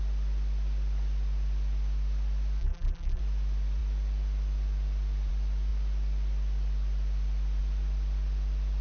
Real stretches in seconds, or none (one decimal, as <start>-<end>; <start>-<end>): 0.0-2.6; 3.2-8.8